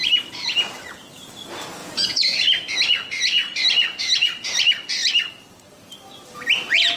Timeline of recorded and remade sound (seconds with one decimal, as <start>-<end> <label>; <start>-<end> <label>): 0.0-1.8 recorded; 1.8-2.4 remade; 2.4-7.0 recorded